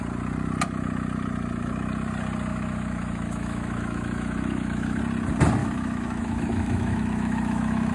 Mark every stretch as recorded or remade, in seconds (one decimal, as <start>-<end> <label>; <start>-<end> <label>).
0.0-2.5 recorded; 2.5-5.0 remade; 5.0-5.6 recorded; 5.6-7.9 remade